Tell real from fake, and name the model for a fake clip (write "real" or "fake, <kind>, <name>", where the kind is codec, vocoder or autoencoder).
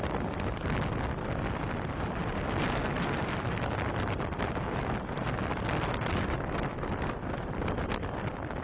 real